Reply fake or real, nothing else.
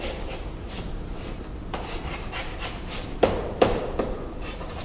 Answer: fake